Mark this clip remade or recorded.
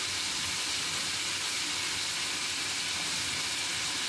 recorded